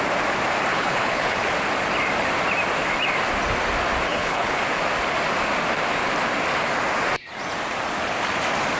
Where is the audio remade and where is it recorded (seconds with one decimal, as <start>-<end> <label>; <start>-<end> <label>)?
0.0-0.7 recorded; 0.7-1.4 remade; 1.4-4.1 recorded; 4.1-4.6 remade; 4.6-8.8 recorded